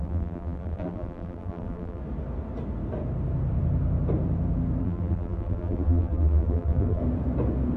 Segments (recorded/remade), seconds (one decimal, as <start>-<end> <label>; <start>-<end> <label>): 0.0-2.0 remade; 2.0-4.8 recorded; 4.8-7.0 remade; 7.0-7.8 recorded